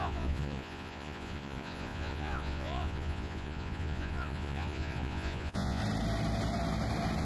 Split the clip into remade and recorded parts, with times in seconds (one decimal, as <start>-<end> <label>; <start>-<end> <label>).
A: 0.0-5.8 remade; 5.8-7.2 recorded